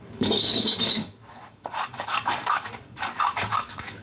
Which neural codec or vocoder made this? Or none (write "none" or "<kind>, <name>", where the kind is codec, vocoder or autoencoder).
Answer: codec, DAC